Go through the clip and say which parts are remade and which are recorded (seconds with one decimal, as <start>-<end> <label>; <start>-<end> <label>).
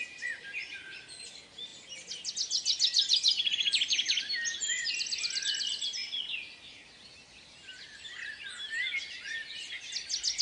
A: 0.0-10.4 recorded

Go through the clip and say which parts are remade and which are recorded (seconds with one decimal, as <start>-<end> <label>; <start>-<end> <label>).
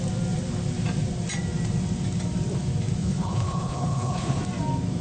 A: 0.0-3.0 recorded; 3.0-4.4 remade; 4.4-5.0 recorded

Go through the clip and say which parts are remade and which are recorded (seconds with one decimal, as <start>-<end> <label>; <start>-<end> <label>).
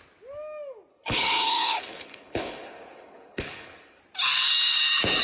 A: 0.0-0.9 recorded; 0.9-4.0 remade; 4.0-5.2 recorded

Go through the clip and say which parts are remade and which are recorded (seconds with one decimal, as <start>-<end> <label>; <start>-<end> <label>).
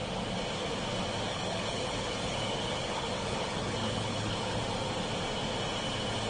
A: 0.0-1.3 recorded; 1.3-4.6 remade; 4.6-6.3 recorded